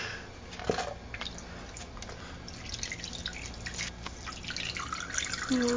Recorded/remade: recorded